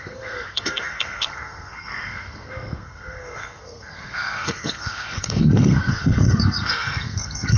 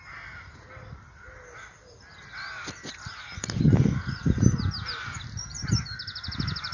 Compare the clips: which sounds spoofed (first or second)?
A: first